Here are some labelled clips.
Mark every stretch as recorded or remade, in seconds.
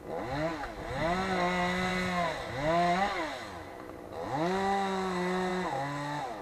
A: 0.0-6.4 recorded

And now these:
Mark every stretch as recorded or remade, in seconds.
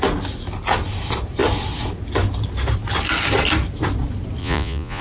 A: 0.0-4.4 recorded; 4.4-5.0 remade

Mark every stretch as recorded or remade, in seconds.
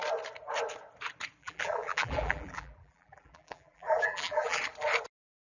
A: 0.0-1.4 recorded; 1.4-4.6 remade; 4.6-5.4 recorded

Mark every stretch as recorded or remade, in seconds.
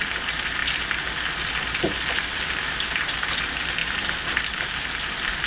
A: 0.0-0.6 recorded; 0.6-3.4 remade; 3.4-3.8 recorded; 3.8-4.9 remade; 4.9-5.5 recorded